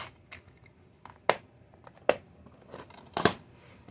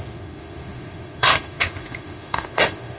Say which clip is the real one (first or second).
first